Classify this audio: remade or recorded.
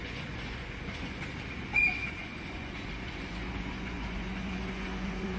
remade